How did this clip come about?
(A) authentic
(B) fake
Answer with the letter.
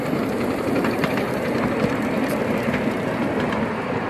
A